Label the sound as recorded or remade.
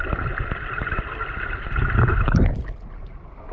recorded